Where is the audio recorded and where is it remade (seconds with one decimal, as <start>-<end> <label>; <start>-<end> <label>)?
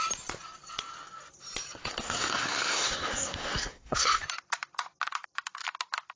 0.0-1.8 recorded; 1.8-4.2 remade; 4.2-6.2 recorded